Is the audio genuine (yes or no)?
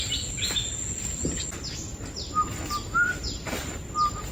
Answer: yes